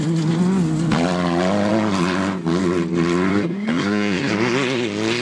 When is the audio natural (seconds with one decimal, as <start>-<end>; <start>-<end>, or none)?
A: 0.0-3.3; 4.3-5.2